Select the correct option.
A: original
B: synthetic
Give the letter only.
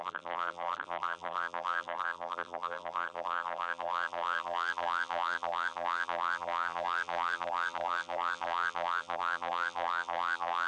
B